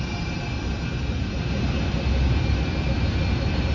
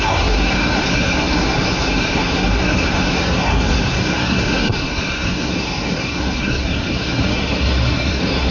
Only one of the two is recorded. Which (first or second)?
first